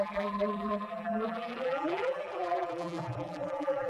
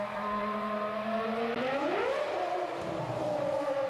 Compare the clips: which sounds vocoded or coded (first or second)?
first